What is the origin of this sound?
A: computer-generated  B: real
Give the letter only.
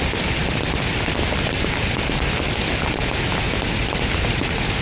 B